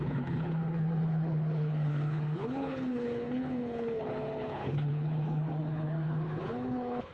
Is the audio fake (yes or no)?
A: yes